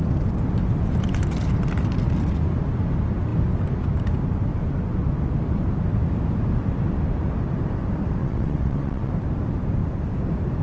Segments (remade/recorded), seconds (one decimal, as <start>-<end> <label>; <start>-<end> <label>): 0.0-8.2 recorded; 8.2-9.1 remade; 9.1-10.6 recorded

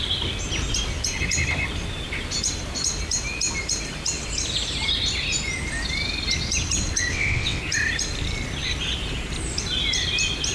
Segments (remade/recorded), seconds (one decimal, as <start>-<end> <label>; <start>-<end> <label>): 0.0-7.1 recorded; 7.1-7.6 remade; 7.6-10.5 recorded

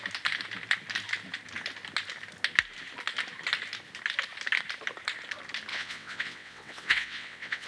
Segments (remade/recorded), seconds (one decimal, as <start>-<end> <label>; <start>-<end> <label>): 0.0-5.7 recorded; 5.7-7.7 remade

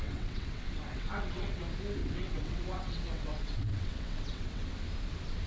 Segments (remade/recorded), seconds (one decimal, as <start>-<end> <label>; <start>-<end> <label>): 0.0-1.6 remade; 1.6-2.0 recorded; 2.0-4.7 remade; 4.7-5.5 recorded

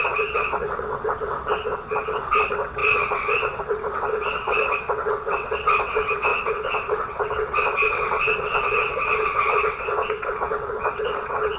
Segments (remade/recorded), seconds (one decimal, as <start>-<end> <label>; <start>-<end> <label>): 0.0-11.6 remade